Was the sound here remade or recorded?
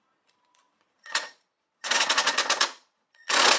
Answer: remade